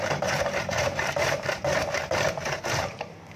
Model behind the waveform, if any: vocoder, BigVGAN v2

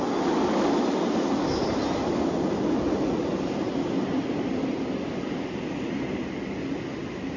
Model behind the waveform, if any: none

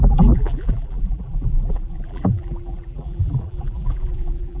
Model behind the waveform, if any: vocoder, BigVGAN v2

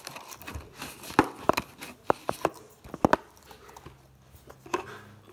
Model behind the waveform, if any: none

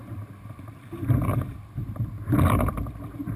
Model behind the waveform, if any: vocoder, BigVGAN v2